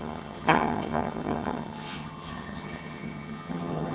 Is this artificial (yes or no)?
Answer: yes